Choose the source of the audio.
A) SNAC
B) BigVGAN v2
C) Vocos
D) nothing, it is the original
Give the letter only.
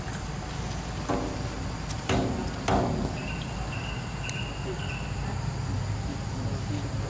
D